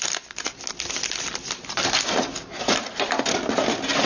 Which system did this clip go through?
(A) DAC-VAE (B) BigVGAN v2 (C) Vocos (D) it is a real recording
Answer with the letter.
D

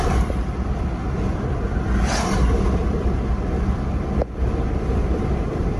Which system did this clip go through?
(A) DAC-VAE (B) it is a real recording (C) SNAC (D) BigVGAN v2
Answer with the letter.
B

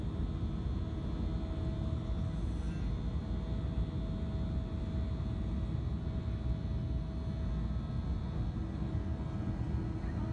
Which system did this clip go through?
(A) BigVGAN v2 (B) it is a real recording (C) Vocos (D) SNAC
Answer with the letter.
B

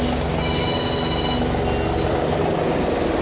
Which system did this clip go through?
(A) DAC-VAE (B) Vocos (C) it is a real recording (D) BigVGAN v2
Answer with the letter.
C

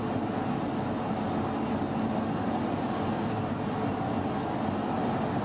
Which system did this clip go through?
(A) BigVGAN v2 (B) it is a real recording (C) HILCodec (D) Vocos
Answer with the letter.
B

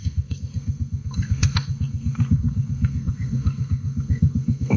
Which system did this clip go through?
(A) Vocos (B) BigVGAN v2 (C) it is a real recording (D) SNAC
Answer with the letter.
D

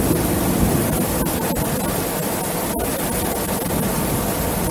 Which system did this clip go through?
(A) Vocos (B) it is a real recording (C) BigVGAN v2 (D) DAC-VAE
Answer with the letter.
B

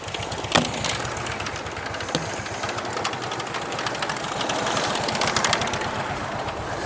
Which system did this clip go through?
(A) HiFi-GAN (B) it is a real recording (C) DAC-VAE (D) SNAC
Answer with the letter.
B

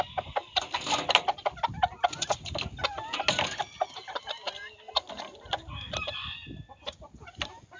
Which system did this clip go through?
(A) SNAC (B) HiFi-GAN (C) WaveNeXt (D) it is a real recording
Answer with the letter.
D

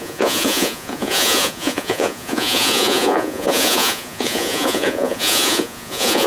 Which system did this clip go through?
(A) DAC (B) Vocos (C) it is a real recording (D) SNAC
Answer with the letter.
B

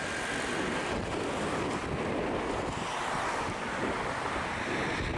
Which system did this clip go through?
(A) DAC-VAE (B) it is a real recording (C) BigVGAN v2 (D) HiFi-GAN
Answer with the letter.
B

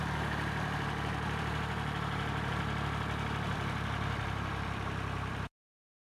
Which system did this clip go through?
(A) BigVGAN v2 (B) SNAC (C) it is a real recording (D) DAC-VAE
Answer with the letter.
A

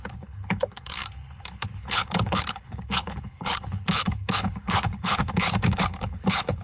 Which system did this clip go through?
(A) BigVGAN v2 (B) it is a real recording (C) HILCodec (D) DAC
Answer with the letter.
C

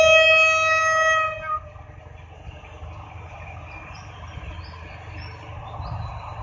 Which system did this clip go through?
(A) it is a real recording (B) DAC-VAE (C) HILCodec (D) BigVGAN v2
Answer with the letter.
A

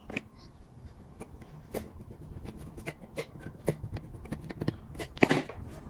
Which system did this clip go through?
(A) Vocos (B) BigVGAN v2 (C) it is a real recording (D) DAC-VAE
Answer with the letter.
D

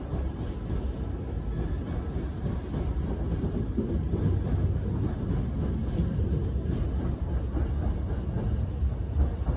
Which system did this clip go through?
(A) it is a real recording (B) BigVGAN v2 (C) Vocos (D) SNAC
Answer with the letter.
A